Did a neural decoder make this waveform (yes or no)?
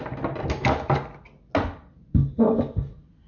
no